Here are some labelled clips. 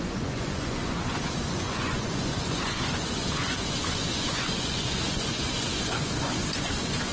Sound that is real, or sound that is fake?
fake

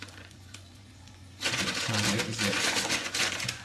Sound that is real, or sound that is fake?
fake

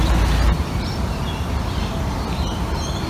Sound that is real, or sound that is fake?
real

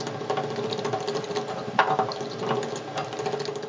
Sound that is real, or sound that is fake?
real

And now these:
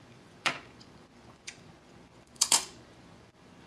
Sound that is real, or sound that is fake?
fake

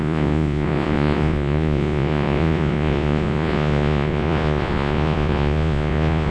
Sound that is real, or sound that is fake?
fake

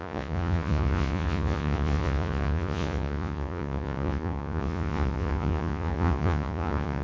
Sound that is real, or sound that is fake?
fake